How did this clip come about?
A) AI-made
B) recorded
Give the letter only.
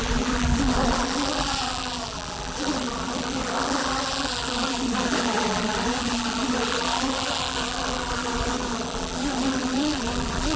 A